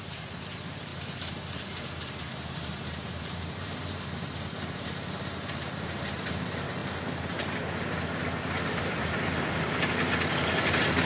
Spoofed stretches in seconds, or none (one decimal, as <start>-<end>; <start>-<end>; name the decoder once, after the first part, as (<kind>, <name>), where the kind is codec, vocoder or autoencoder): 0.0-6.8 (vocoder, BigVGAN v2); 8.8-11.1